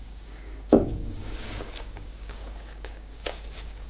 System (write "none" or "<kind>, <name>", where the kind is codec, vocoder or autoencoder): codec, DAC